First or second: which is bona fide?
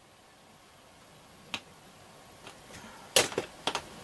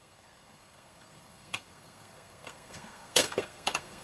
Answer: first